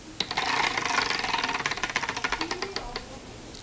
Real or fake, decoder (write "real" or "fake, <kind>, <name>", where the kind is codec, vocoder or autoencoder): real